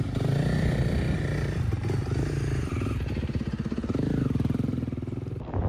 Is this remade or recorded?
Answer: recorded